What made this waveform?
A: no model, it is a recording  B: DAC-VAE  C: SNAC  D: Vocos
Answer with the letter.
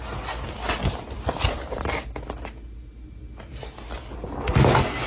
A